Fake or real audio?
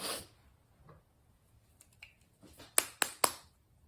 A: real